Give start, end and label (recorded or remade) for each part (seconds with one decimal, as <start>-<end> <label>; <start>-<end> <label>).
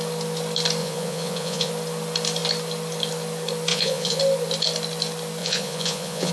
0.0-0.8 recorded; 0.8-1.7 remade; 1.7-3.7 recorded; 3.7-4.2 remade; 4.2-5.4 recorded; 5.4-6.3 remade